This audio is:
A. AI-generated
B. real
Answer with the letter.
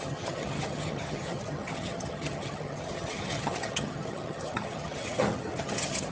A